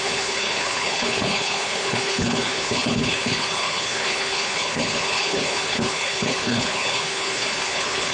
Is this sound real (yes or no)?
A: no